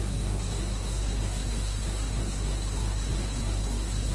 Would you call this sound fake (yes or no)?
yes